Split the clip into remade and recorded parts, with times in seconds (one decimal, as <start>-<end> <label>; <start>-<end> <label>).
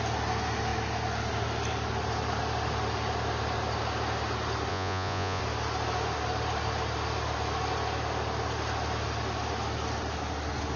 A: 0.0-4.7 recorded; 4.7-5.4 remade; 5.4-10.8 recorded